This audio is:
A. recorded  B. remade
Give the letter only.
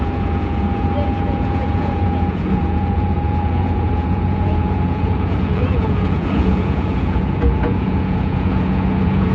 B